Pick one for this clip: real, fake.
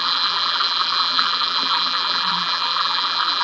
fake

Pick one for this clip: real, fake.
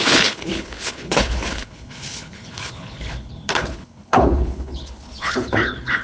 fake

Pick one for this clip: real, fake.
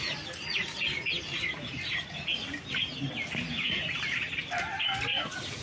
real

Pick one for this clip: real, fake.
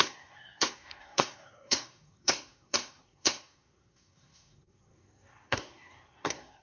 fake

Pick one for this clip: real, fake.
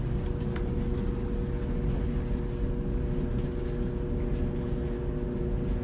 real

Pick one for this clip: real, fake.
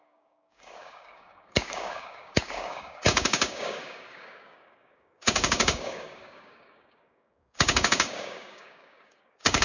fake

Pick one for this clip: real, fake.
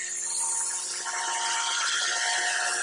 real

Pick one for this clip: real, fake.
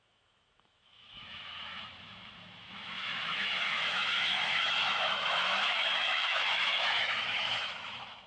fake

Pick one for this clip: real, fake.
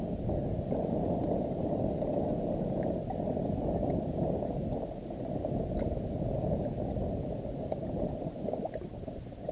real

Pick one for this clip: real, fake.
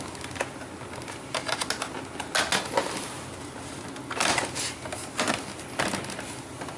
real